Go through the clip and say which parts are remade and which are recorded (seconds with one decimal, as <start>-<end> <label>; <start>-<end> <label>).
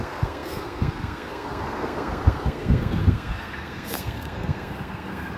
0.0-5.4 remade